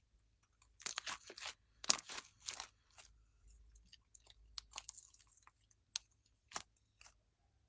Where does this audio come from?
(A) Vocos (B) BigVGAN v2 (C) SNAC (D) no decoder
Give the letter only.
D